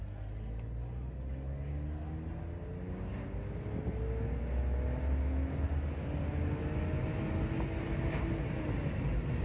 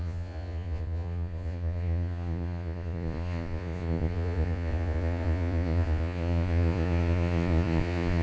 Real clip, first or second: first